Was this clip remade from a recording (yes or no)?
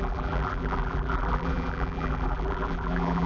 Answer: yes